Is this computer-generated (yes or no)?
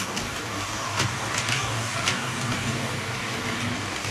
yes